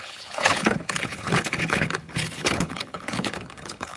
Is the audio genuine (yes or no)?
no